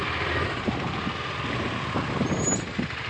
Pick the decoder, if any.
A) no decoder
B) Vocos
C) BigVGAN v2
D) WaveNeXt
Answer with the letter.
A